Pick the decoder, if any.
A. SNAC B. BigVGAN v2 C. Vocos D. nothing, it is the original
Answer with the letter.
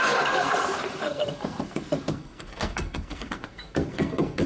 A